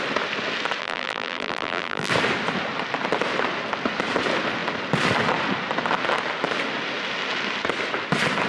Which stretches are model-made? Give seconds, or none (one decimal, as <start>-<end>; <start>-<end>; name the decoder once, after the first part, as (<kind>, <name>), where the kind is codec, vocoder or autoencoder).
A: 0.8-2.1 (vocoder, BigVGAN v2)